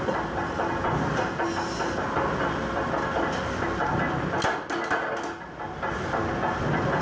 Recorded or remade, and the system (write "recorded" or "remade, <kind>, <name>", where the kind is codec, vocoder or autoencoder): recorded